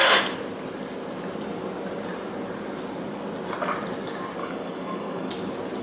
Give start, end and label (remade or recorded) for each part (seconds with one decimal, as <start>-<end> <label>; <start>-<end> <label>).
0.0-4.4 recorded; 4.4-5.3 remade; 5.3-5.8 recorded